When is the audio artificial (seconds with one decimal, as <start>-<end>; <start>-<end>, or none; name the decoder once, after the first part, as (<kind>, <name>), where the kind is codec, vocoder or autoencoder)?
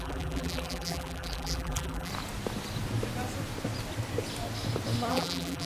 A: 0.0-2.1 (vocoder, BigVGAN v2); 5.1-5.7